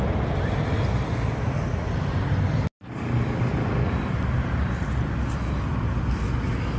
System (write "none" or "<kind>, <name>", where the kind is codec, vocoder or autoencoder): none